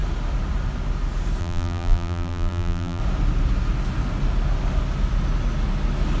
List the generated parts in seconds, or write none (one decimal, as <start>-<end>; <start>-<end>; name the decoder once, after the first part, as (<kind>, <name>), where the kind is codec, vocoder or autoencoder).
1.4-3.0 (vocoder, BigVGAN v2)

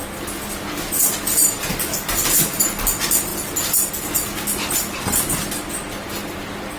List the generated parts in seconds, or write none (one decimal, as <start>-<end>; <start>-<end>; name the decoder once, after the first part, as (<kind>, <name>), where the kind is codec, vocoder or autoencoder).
none

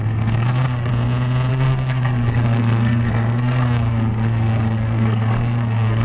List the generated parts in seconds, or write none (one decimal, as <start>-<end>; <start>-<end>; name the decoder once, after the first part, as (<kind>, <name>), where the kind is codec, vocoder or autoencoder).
0.0-0.9 (codec, SNAC); 1.5-6.0

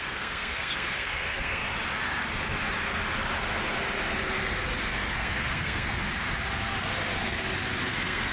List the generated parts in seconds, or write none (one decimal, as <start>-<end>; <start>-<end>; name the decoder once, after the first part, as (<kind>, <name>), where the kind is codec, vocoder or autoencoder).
0.0-1.6 (codec, SNAC); 4.8-6.0; 7.9-8.3